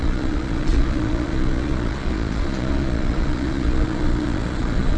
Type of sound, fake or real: fake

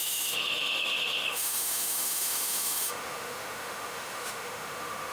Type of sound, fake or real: fake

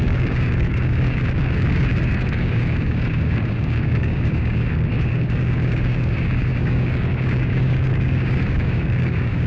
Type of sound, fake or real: fake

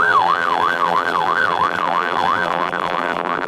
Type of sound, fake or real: fake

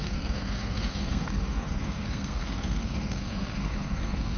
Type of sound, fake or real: fake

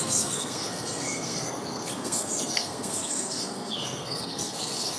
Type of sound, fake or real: fake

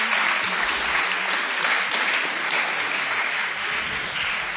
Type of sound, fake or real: real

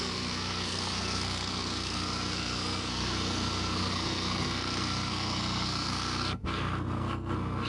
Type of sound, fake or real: fake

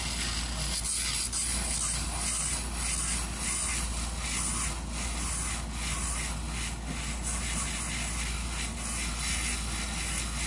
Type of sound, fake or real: real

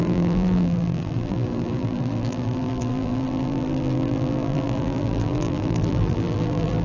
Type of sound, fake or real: fake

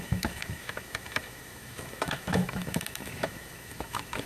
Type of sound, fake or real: fake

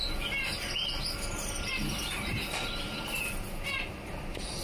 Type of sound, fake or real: real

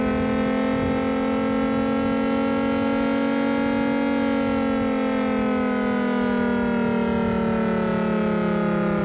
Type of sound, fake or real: real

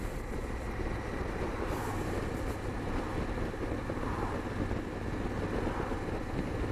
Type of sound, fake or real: real